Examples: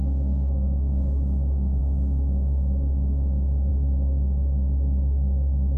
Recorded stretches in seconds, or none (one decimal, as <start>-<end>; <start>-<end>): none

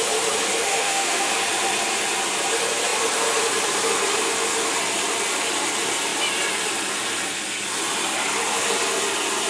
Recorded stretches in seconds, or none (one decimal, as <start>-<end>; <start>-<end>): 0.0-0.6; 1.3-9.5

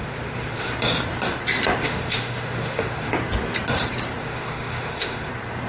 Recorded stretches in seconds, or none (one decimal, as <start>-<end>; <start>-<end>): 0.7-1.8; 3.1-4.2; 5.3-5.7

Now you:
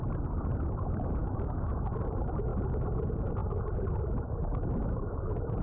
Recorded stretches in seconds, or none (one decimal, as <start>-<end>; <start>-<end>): 0.0-1.2; 1.9-5.6

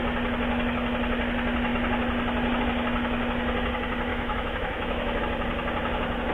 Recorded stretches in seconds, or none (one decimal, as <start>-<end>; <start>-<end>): 0.0-4.1; 5.2-6.3

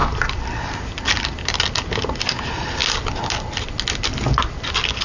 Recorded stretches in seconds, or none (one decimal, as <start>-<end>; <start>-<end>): 0.0-5.0